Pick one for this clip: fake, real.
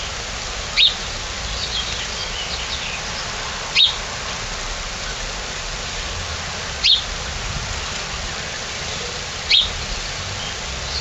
real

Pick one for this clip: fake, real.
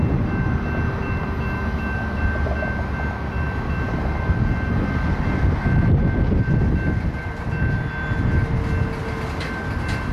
real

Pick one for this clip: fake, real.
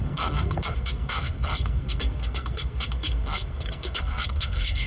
fake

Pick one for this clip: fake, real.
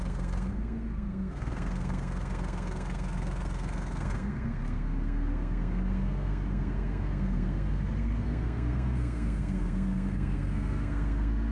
fake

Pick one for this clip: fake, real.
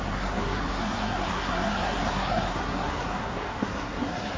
fake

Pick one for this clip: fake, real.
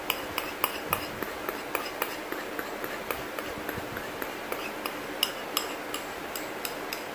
real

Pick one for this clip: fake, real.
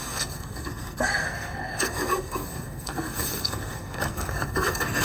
fake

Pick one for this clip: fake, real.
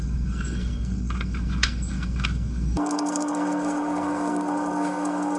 fake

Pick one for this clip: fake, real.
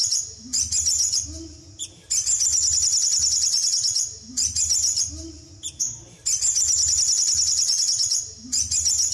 real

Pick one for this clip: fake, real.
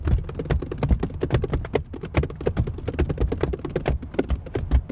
real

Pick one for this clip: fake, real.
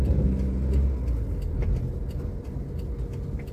real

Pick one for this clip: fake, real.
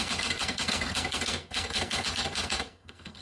fake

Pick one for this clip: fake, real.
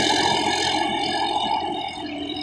real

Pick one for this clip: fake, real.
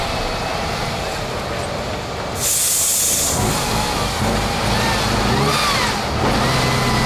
real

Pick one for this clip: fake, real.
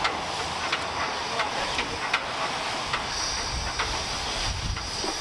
real